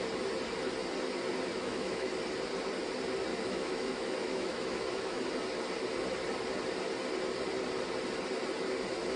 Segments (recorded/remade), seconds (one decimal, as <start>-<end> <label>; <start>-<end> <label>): 0.0-1.5 recorded; 1.5-2.1 remade; 2.1-3.3 recorded; 3.3-5.2 remade; 5.2-9.2 recorded